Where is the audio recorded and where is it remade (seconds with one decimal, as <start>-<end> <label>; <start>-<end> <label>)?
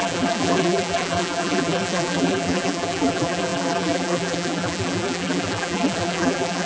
0.0-6.7 remade